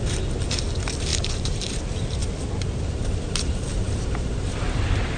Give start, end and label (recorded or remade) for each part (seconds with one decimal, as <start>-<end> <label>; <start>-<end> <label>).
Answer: 0.0-1.1 recorded; 1.1-1.8 remade; 1.8-3.7 recorded; 3.7-4.8 remade; 4.8-5.2 recorded